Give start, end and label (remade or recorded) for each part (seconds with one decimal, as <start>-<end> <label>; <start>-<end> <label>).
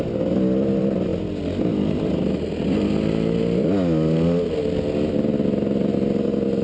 0.0-6.6 recorded